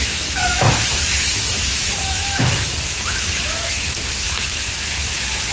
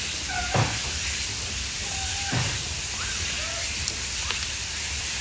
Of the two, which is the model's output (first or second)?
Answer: first